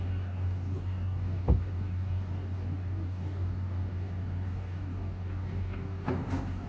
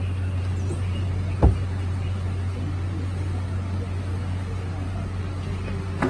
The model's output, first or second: first